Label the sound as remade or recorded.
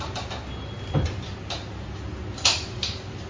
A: recorded